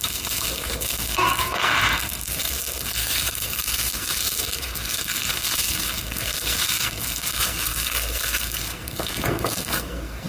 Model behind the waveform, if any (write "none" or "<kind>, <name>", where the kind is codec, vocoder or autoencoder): codec, SNAC